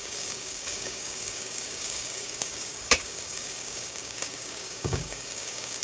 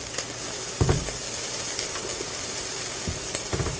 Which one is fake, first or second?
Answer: first